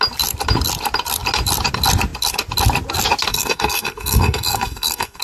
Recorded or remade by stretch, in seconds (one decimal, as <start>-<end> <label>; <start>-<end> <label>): 0.0-3.3 recorded; 3.3-5.2 remade